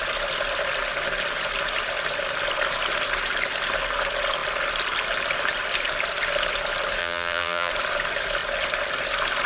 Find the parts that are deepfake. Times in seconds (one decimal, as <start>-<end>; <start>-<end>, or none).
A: 7.0-7.7